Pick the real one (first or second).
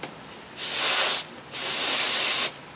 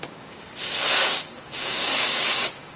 first